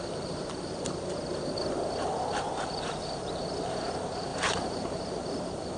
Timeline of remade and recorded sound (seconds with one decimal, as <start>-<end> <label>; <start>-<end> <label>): 0.0-4.3 recorded; 4.3-5.0 remade; 5.0-5.8 recorded